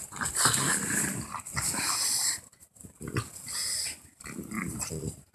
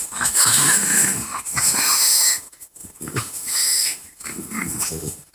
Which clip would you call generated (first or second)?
second